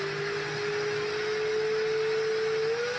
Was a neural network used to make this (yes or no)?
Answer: no